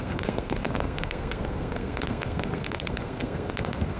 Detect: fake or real fake